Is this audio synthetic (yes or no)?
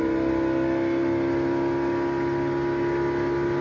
no